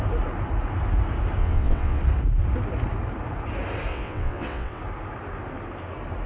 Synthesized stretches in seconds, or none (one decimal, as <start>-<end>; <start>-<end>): 1.4-2.0; 3.9-4.8